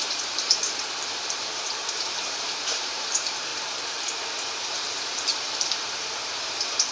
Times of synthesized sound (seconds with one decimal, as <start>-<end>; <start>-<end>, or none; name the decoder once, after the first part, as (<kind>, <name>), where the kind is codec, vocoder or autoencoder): 0.0-3.5 (vocoder, BigVGAN v2); 4.5-6.9